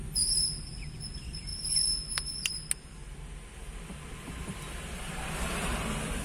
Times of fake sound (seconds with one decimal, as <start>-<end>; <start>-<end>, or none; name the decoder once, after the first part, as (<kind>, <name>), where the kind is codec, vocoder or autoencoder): none